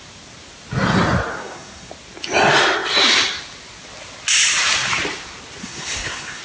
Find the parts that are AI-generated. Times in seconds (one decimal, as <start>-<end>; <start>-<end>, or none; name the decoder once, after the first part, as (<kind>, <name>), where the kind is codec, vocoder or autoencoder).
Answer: 1.3-1.9 (codec, SNAC); 5.6-6.4